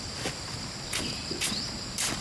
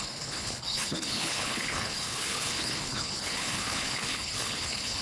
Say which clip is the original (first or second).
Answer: first